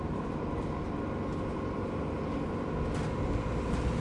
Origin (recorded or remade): recorded